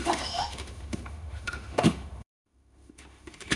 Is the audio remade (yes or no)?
yes